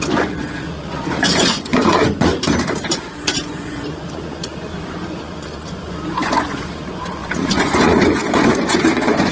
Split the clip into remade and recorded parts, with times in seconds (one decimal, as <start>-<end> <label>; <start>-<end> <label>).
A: 0.0-2.3 remade; 2.3-2.9 recorded; 2.9-9.3 remade